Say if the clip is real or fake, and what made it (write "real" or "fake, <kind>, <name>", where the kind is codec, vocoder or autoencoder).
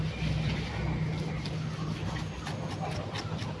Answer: real